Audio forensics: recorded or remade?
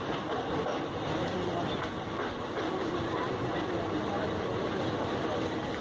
recorded